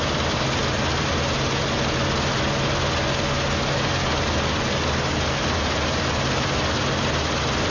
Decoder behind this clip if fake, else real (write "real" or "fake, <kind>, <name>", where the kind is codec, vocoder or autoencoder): real